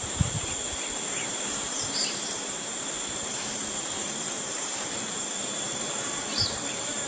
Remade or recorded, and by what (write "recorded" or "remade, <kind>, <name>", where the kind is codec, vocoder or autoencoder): remade, vocoder, BigVGAN v2